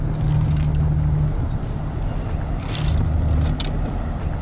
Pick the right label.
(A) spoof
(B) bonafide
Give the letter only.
B